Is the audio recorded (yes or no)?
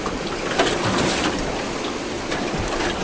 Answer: yes